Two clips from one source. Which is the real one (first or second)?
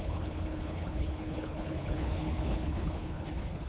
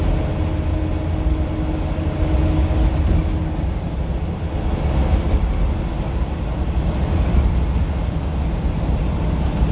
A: second